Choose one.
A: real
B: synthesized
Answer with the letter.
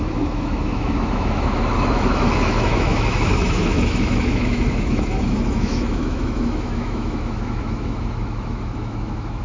B